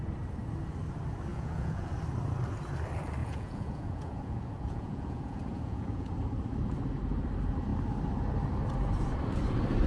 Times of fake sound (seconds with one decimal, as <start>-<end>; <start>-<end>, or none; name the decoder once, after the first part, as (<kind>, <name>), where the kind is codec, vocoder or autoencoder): 1.3-1.9 (vocoder, Vocos); 3.2-6.1